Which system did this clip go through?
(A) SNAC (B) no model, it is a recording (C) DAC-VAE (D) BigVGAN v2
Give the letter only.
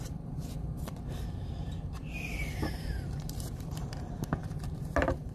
D